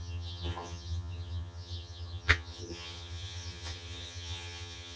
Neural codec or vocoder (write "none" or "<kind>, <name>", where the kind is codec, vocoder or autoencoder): vocoder, HiFi-GAN